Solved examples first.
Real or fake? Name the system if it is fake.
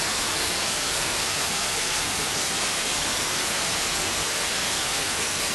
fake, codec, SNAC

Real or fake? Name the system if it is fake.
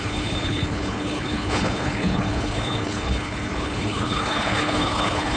fake, codec, HILCodec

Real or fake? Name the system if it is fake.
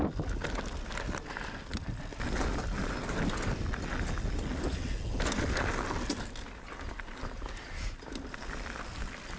real